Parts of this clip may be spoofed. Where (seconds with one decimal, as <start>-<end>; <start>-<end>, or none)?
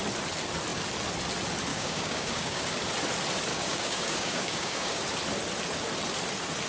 1.7-2.8; 3.5-5.0